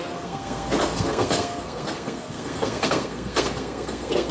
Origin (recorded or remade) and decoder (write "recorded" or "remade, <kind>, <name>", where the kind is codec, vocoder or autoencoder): remade, codec, SNAC